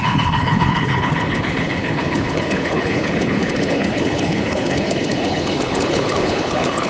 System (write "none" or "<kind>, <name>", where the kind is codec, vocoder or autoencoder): codec, HILCodec